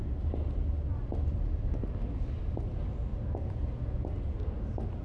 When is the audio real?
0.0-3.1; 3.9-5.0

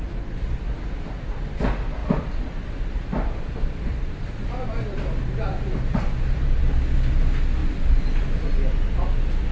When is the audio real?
0.0-2.0; 6.6-7.6; 8.5-9.5

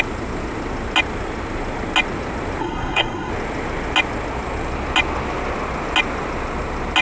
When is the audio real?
0.0-2.6; 3.3-7.0

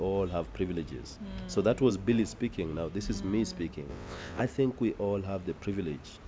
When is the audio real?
0.0-3.9; 4.4-6.3

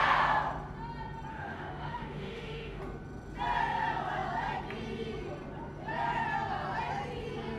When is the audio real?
0.0-1.3; 2.8-7.6

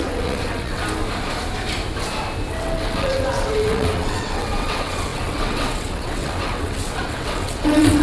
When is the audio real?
0.8-2.5

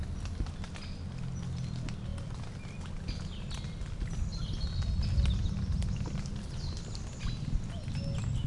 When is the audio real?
0.0-8.5